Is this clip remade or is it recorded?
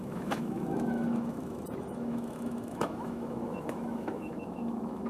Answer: remade